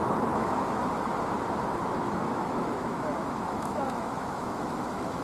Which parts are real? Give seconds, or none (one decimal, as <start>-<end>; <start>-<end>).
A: 0.8-2.0